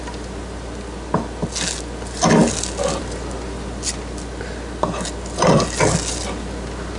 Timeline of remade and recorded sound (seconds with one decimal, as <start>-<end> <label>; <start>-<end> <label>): 0.0-7.0 recorded